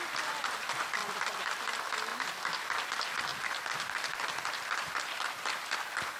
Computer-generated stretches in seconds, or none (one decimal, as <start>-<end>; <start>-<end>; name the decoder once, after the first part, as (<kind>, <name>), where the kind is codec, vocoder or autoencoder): 0.0-2.1 (vocoder, BigVGAN v2); 2.9-6.2